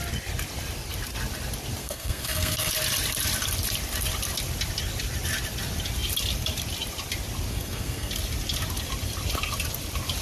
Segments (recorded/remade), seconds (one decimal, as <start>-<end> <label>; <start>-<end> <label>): 0.0-1.8 recorded; 1.8-2.7 remade; 2.7-7.5 recorded; 7.5-8.1 remade; 8.1-10.2 recorded

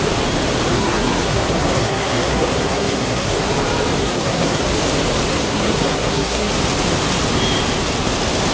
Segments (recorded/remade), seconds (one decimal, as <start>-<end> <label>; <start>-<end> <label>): 0.0-0.7 recorded; 0.7-3.5 remade; 3.5-4.0 recorded; 4.0-4.6 remade; 4.6-5.3 recorded; 5.3-6.5 remade; 6.5-8.5 recorded

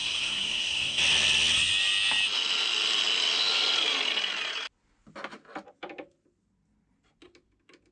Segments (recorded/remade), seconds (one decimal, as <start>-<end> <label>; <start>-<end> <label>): 0.0-1.0 remade; 1.0-7.9 recorded

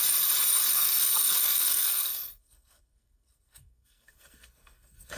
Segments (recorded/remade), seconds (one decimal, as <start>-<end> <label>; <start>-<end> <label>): 0.0-0.7 recorded; 0.7-5.2 remade